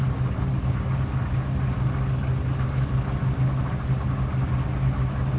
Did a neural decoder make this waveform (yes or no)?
no